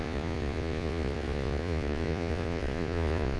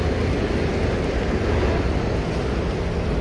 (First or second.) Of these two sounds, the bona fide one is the second